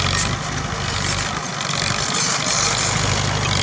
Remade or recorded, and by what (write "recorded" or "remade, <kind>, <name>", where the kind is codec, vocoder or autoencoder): recorded